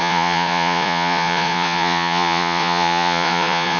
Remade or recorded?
remade